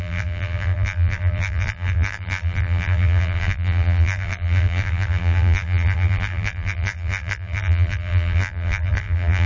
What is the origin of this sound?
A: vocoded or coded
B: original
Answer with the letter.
A